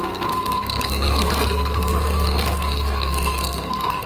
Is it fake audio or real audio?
fake